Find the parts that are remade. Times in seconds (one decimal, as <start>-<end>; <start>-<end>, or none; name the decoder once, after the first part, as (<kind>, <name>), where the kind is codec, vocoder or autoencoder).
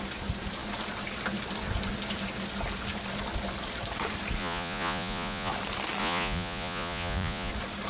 4.4-5.5 (vocoder, Vocos); 6.0-7.5